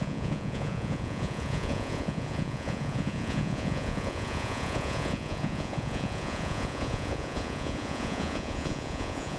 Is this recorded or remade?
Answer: remade